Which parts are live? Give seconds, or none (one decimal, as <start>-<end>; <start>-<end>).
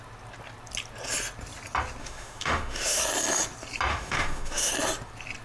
0.0-2.0; 3.0-3.9; 4.7-5.4